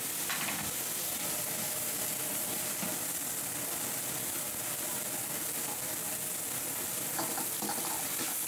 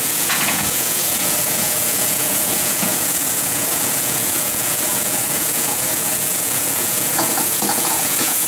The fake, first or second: second